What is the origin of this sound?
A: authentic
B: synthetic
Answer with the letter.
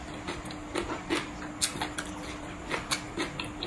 A